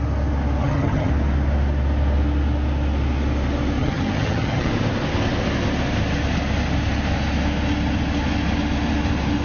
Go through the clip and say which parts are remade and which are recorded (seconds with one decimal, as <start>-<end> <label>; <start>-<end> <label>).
0.0-0.6 recorded; 0.6-1.1 remade; 1.1-3.8 recorded; 3.8-4.7 remade; 4.7-9.4 recorded